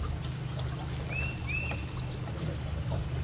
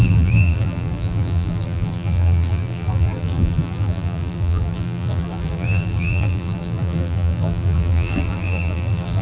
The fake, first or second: second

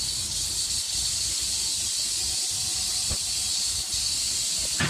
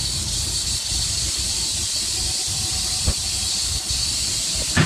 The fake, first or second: second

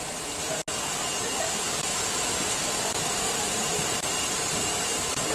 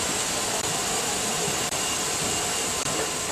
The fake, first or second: second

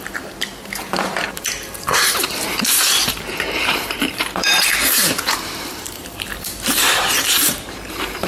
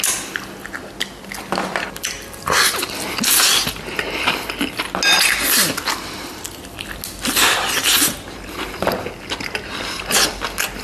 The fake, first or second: first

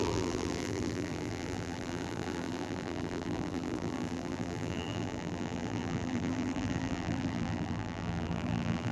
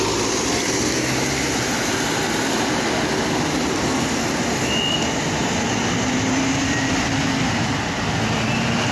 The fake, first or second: first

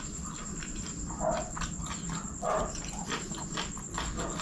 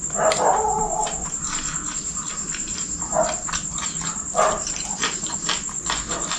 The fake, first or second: first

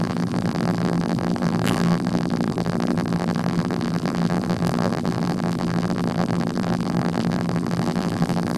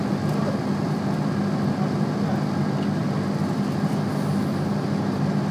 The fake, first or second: first